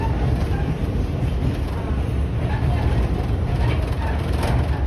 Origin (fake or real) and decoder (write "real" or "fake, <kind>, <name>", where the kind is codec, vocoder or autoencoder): real